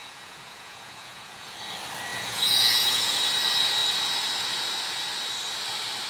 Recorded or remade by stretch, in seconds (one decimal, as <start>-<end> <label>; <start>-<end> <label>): 0.0-1.5 remade; 1.5-2.1 recorded; 2.1-3.2 remade; 3.2-6.1 recorded